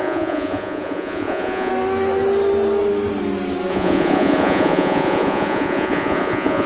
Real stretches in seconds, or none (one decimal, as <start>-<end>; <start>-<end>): 1.7-3.7